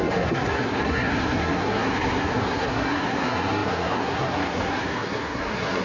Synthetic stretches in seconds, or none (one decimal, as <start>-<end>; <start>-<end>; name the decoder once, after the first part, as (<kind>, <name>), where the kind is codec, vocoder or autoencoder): 0.0-5.8 (codec, SNAC)